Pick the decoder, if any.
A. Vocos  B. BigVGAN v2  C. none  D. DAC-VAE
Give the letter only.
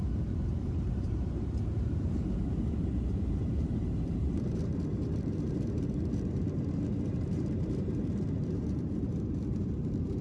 B